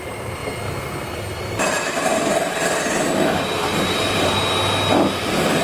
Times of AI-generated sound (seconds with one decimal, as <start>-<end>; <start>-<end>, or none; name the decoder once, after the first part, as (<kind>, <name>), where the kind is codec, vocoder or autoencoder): 0.0-0.4 (vocoder, BigVGAN v2); 1.4-4.4

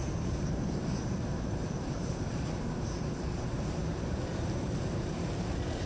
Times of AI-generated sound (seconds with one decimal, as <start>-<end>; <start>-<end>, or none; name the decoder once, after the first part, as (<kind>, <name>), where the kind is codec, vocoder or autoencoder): 0.0-5.9 (vocoder, BigVGAN v2)

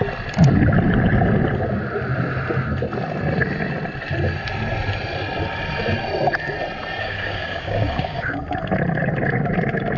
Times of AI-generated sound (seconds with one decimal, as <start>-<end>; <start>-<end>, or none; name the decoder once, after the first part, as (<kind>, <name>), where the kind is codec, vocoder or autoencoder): 7.0-8.4 (codec, DAC)